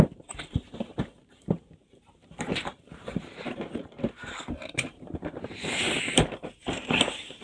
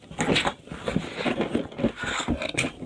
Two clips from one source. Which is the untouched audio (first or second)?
second